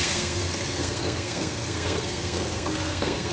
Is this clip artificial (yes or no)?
yes